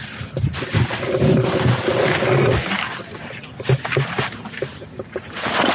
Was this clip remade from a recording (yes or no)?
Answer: no